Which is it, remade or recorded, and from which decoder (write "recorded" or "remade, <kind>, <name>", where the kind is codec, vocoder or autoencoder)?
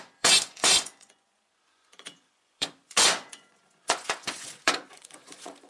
remade, vocoder, Vocos